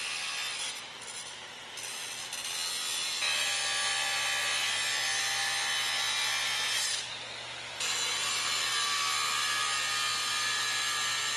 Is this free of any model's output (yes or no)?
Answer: yes